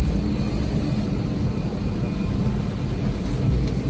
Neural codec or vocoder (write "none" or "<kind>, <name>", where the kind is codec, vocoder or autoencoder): none